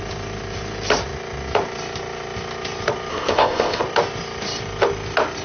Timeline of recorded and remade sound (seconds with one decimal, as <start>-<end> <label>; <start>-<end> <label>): 0.0-3.1 recorded; 3.1-3.8 remade; 3.8-5.4 recorded